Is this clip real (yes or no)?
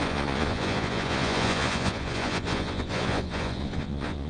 no